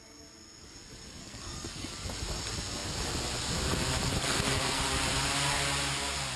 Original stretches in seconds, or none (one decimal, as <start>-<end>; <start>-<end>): 0.0-1.2; 1.9-4.2; 4.8-6.4